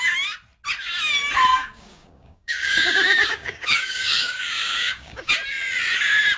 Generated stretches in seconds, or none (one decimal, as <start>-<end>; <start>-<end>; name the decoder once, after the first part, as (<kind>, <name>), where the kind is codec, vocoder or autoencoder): 1.5-5.3 (codec, DAC)

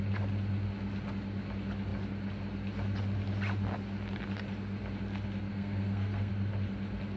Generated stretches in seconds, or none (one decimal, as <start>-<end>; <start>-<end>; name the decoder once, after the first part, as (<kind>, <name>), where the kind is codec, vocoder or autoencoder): 5.5-6.3 (codec, SNAC)

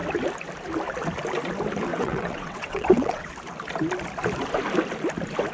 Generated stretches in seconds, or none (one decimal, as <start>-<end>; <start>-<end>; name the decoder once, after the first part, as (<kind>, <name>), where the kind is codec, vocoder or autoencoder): 1.9-3.3 (vocoder, WaveNeXt)

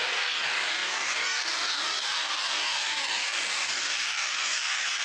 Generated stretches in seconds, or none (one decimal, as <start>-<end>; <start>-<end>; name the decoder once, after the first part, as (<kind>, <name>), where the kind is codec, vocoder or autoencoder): 0.0-5.0 (codec, DAC)

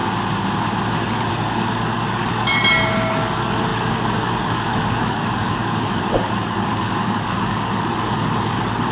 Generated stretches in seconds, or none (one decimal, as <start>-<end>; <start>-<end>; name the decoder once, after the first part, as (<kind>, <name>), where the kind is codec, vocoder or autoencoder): 1.3-8.9 (codec, DAC)

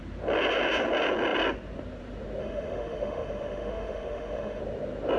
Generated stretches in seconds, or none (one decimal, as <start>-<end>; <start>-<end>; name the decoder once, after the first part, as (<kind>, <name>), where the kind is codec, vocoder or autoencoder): 2.4-4.6 (autoencoder, DAC-VAE)

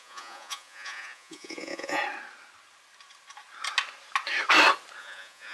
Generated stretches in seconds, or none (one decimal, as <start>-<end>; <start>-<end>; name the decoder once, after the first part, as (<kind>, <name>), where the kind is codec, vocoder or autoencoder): 0.0-2.0 (vocoder, Vocos); 5.0-5.5

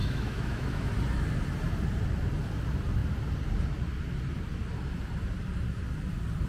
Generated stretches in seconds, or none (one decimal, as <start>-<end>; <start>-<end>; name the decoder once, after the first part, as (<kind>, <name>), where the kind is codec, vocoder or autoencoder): 0.0-0.9 (autoencoder, DAC-VAE)